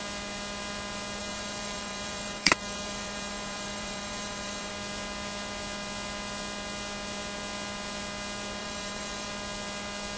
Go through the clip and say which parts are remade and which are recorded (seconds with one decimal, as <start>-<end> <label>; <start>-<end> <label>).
0.0-1.2 recorded; 1.2-4.7 remade; 4.7-8.6 recorded; 8.6-9.3 remade; 9.3-10.2 recorded